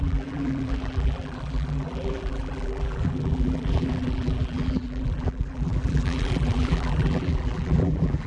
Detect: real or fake fake